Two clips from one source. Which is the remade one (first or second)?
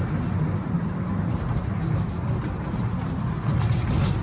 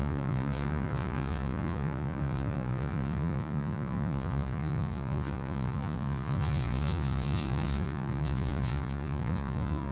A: second